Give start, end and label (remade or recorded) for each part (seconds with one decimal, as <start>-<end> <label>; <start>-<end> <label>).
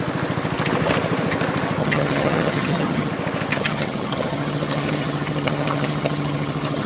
0.0-1.8 recorded; 1.8-3.1 remade; 3.1-3.5 recorded; 3.5-6.9 remade